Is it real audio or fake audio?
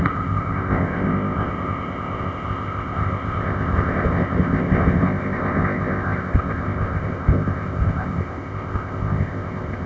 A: fake